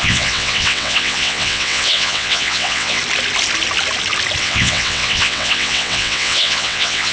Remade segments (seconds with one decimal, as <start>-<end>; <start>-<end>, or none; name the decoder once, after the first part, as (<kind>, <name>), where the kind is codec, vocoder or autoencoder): 0.0-3.0 (vocoder, WaveNeXt); 4.4-7.1